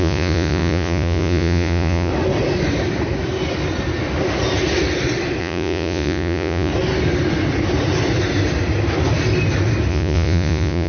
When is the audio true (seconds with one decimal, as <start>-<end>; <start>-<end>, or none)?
2.1-5.4; 6.7-9.9